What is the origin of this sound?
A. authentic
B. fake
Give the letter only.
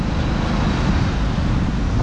A